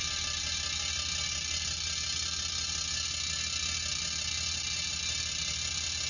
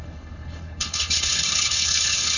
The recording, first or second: first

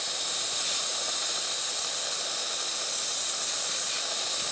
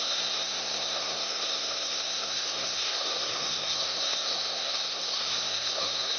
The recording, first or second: first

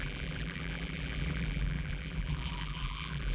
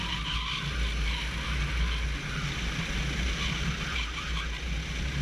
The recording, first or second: second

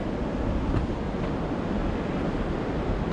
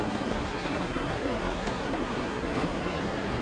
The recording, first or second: first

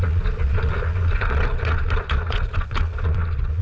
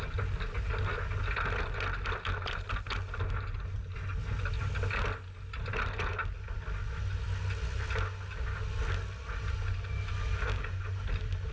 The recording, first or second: second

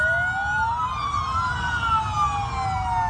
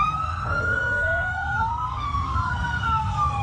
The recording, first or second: first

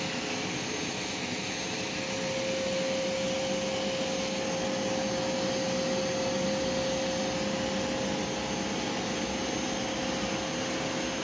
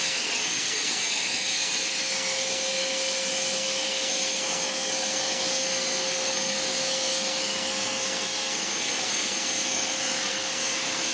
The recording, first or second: first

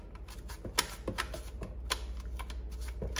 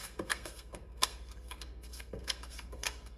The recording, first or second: first